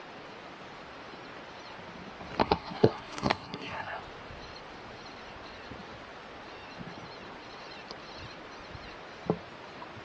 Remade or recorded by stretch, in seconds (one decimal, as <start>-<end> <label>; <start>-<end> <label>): 0.0-2.4 recorded; 2.4-4.0 remade; 4.0-10.0 recorded